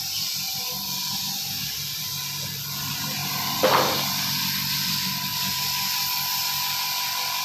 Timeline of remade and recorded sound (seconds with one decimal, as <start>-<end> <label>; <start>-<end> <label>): 0.0-3.2 remade; 3.2-4.7 recorded; 4.7-7.4 remade